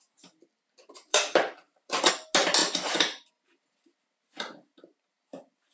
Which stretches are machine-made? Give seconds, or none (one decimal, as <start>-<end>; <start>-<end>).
1.1-2.1; 2.6-3.3